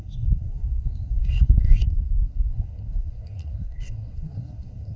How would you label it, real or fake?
fake